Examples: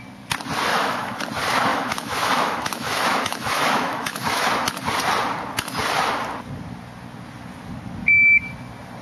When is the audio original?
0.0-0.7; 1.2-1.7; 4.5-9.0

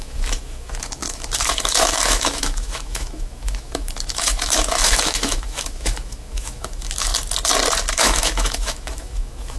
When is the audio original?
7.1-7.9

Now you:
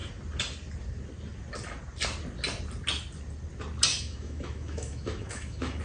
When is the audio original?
0.0-3.9

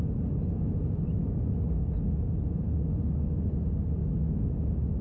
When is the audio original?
0.0-4.0; 4.5-5.0